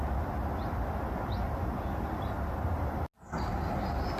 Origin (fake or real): real